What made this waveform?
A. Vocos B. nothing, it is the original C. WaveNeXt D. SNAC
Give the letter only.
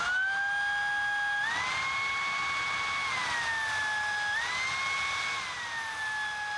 B